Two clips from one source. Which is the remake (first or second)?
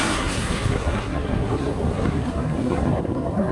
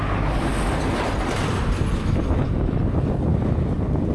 first